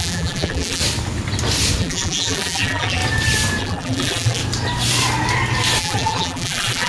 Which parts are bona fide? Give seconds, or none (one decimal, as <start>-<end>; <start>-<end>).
0.8-1.8; 3.0-3.6; 4.4-5.8